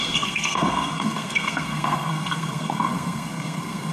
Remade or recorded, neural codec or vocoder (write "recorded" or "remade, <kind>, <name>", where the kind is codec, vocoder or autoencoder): remade, codec, SNAC